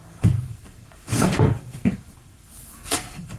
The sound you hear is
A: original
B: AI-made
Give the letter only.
B